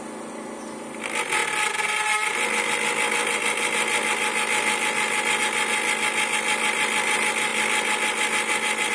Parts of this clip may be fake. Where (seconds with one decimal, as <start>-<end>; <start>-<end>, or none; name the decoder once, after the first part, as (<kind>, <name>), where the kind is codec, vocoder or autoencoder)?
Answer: none